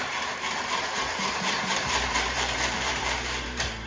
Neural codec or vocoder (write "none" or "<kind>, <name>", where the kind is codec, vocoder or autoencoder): vocoder, BigVGAN v2